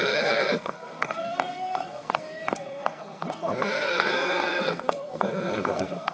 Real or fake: fake